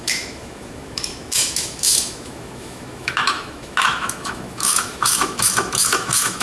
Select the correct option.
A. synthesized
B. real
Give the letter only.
A